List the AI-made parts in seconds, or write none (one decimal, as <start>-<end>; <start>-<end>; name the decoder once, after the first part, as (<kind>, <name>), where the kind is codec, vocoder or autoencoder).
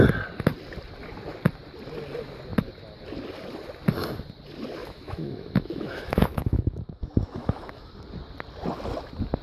4.8-7.9 (autoencoder, DAC-VAE)